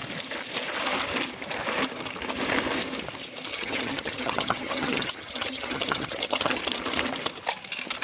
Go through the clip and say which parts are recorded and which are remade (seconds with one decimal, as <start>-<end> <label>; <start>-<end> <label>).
0.0-3.5 recorded; 3.5-6.6 remade; 6.6-8.0 recorded